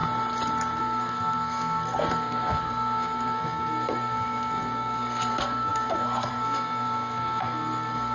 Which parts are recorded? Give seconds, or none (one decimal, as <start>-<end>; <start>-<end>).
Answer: 0.0-0.8